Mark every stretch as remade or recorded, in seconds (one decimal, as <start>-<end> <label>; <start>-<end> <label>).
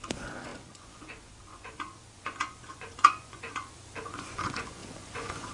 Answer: 0.0-5.5 remade